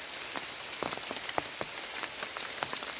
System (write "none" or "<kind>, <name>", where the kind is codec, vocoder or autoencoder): vocoder, BigVGAN v2